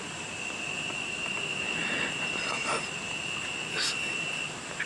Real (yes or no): no